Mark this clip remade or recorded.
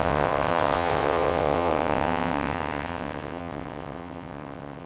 remade